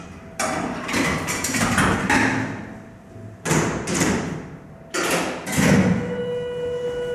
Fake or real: real